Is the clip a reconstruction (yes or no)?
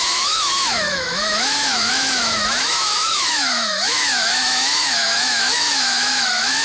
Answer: yes